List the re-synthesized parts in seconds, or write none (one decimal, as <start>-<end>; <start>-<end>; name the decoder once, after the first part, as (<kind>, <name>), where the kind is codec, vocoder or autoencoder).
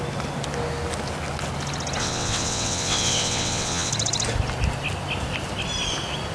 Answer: 2.0-3.9 (vocoder, WaveNeXt)